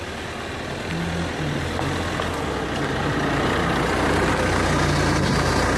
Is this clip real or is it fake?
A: real